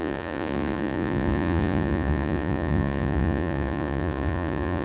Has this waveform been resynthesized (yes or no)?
yes